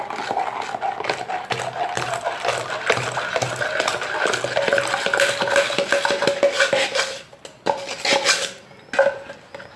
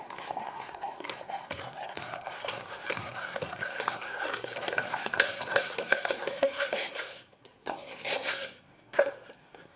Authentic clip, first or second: first